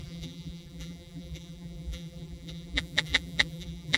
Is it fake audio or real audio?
fake